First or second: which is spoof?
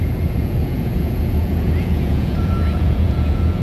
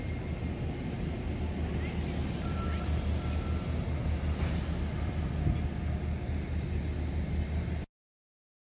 first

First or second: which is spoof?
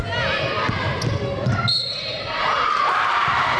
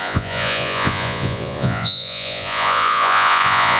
second